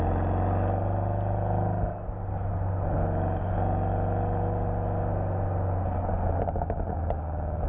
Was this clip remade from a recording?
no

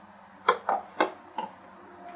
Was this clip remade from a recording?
no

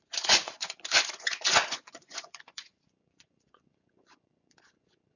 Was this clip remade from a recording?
yes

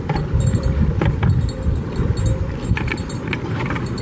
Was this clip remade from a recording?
no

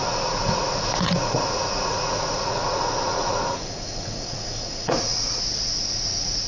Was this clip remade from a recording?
yes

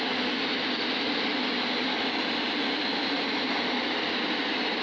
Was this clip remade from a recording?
no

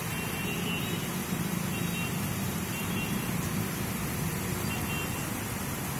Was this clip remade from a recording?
no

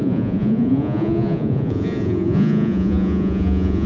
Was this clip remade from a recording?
yes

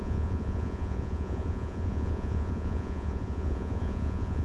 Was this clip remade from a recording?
yes